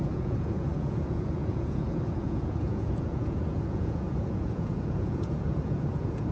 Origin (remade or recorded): remade